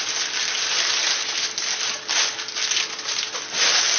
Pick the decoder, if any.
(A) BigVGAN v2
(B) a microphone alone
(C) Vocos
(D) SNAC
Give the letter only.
B